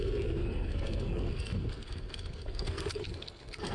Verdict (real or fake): fake